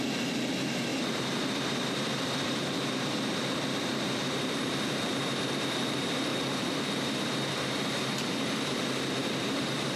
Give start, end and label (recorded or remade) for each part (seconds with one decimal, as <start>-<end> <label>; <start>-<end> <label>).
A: 0.0-0.9 recorded; 0.9-5.4 remade; 5.4-6.3 recorded; 6.3-10.0 remade